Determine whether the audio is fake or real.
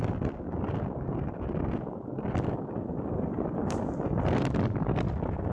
real